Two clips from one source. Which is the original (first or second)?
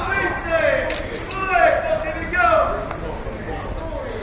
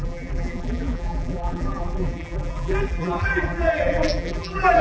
first